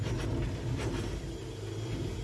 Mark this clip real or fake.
real